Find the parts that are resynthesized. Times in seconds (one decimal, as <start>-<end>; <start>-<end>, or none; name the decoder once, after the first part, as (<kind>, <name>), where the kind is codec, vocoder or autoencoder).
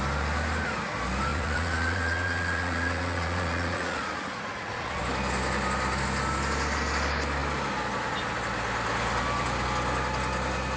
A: 1.3-5.0 (vocoder, Vocos)